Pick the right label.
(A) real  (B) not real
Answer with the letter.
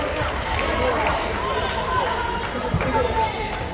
B